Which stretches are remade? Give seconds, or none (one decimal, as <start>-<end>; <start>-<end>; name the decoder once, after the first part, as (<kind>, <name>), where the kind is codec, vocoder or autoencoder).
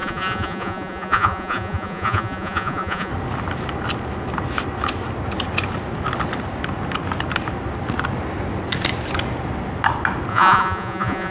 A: 0.0-3.1 (vocoder, Vocos); 10.3-11.3